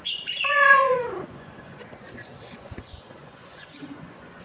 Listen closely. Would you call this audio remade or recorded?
remade